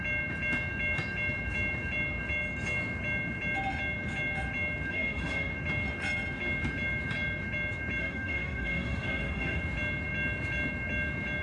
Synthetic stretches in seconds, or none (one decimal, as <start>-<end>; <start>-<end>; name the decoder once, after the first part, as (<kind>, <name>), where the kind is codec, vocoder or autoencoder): 4.9-5.5 (autoencoder, DAC-VAE); 8.0-9.6